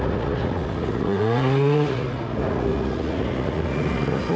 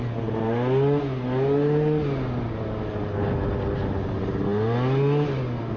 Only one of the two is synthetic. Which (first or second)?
first